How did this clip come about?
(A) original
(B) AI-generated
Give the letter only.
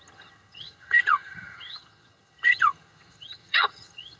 B